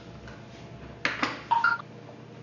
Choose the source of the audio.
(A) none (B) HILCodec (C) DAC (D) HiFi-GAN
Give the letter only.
A